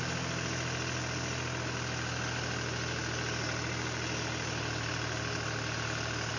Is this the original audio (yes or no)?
yes